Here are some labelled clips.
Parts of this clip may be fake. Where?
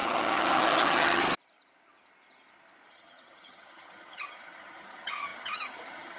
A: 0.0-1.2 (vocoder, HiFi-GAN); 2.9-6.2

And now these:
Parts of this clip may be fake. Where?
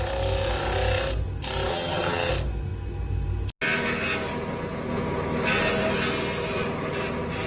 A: 1.7-2.3 (vocoder, HiFi-GAN)